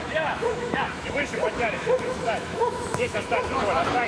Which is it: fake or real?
fake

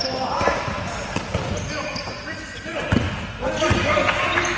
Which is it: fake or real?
real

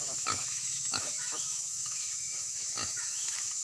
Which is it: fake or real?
fake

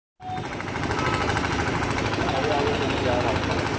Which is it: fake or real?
real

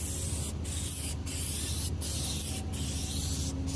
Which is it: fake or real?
real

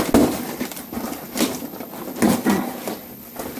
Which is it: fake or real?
real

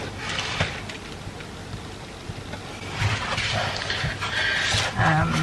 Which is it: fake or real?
real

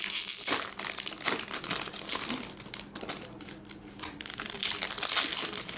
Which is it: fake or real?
real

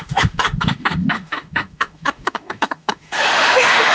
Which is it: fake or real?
fake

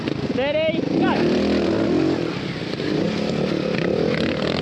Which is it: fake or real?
real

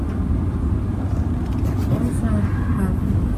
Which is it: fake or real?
real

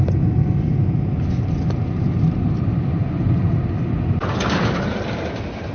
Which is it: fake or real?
real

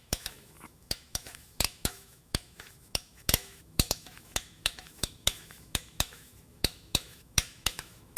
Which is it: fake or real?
fake